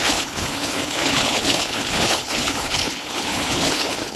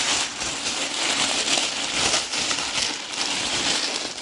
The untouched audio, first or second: second